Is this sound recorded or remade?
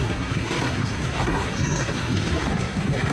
remade